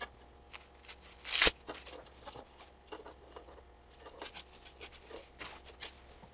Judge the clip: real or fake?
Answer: real